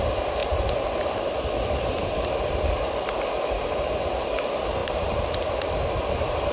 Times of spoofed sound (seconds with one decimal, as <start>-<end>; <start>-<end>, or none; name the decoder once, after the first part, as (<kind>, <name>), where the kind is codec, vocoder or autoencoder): 0.4-3.3 (vocoder, BigVGAN v2); 4.8-6.0

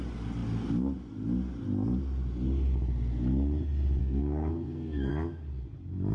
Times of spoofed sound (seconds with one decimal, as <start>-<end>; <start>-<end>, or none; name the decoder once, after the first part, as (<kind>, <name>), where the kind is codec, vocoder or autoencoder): 4.0-5.1 (codec, SNAC)

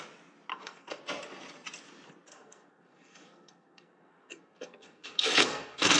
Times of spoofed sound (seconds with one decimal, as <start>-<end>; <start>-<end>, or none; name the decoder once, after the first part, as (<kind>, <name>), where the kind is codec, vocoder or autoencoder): 0.5-1.0 (codec, SNAC); 2.3-6.0

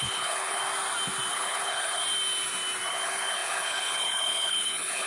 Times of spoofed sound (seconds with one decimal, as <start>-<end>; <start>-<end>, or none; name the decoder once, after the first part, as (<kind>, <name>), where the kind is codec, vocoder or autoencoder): 0.0-0.6 (codec, HILCodec); 1.3-2.0; 2.9-5.1

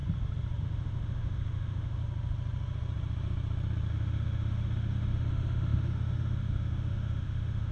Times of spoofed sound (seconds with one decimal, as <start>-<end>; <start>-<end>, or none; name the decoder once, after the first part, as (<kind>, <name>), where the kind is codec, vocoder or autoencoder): 0.6-2.0 (autoencoder, DAC-VAE); 3.9-7.7

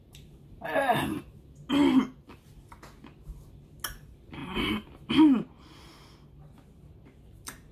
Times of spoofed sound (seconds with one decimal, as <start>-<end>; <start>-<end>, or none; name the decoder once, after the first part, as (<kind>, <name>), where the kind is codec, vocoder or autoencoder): none